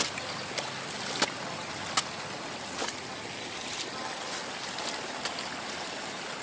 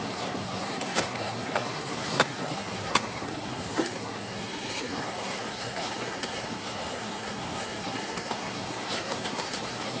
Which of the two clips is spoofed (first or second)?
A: second